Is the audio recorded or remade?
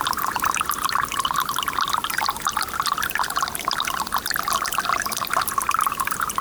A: recorded